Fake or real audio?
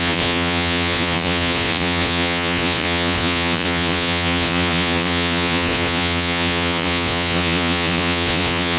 fake